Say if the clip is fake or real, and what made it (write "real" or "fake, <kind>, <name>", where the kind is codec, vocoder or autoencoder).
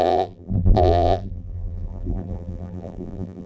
fake, vocoder, BigVGAN v2